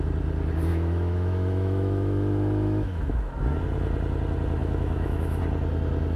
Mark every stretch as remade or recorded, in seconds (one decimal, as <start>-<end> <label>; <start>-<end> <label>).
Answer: 0.0-0.7 recorded; 0.7-3.3 remade; 3.3-4.6 recorded; 4.6-5.4 remade; 5.4-6.2 recorded